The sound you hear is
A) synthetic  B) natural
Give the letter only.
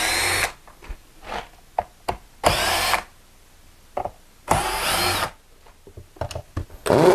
B